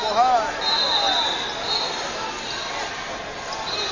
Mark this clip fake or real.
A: real